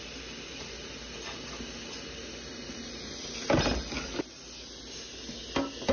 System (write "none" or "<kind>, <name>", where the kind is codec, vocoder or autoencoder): none